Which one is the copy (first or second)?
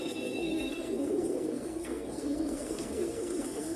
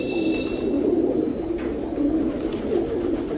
first